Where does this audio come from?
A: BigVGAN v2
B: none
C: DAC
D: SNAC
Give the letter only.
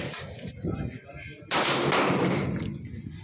B